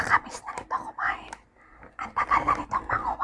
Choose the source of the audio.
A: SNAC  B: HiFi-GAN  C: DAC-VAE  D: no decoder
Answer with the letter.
D